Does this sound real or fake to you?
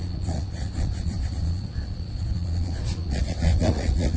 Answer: fake